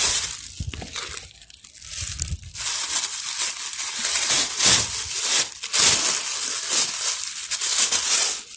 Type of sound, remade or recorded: recorded